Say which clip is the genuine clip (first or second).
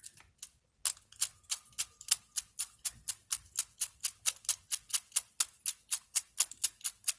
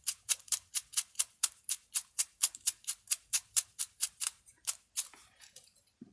first